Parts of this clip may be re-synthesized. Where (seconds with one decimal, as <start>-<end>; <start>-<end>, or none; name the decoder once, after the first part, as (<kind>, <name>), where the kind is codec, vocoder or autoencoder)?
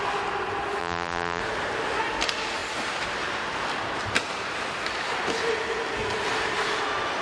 0.8-1.4 (vocoder, BigVGAN v2)